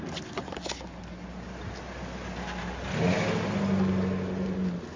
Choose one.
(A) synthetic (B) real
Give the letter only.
B